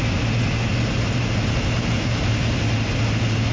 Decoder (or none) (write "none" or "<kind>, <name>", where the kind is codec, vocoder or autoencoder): none